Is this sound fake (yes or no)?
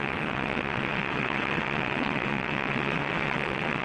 yes